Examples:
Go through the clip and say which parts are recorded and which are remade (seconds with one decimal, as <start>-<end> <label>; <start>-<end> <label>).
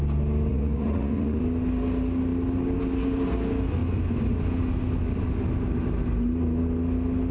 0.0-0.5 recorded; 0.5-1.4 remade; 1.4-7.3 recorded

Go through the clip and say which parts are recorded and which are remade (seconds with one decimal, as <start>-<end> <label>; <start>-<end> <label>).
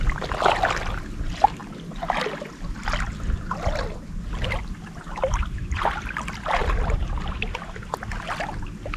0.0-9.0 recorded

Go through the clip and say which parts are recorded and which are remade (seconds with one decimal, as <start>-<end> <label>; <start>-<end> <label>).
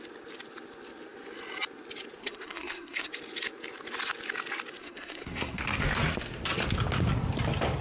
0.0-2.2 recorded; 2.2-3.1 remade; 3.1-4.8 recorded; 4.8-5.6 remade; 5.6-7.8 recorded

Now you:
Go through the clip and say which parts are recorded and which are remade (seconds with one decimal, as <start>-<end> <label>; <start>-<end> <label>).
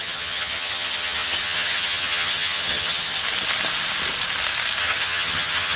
0.0-3.2 remade; 3.2-4.8 recorded; 4.8-5.8 remade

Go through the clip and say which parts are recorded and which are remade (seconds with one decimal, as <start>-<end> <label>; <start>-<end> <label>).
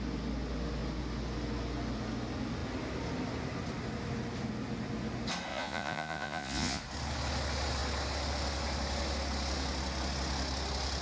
0.0-5.5 recorded; 5.5-6.8 remade; 6.8-11.0 recorded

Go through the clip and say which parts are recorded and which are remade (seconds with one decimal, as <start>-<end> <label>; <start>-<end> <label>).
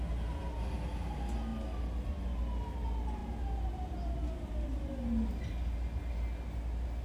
0.0-7.0 recorded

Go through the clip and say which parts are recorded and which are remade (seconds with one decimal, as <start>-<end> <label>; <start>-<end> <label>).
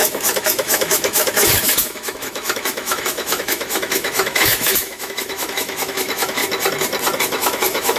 0.0-6.4 remade; 6.4-7.2 recorded; 7.2-8.0 remade